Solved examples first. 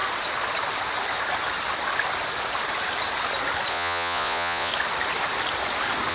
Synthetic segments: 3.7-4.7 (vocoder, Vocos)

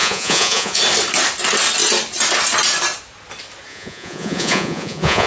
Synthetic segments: 0.0-0.8 (vocoder, Vocos); 3.7-5.3

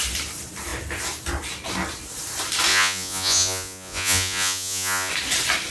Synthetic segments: 2.7-5.1 (vocoder, Vocos)

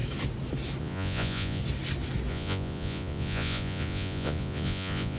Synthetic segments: 0.8-1.6 (vocoder, Vocos); 2.3-5.2

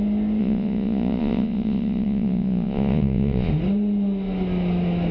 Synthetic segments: 0.4-3.5 (vocoder, Vocos)

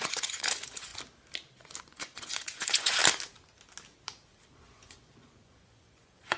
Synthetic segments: 0.0-0.9 (vocoder, Vocos); 1.8-3.0; 4.5-6.4

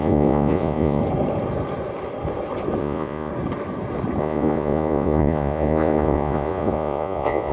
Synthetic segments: 0.0-1.0 (vocoder, Vocos); 2.8-3.3; 4.2-7.5

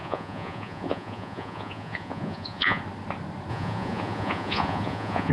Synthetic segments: 0.0-2.8 (vocoder, Vocos); 3.5-5.3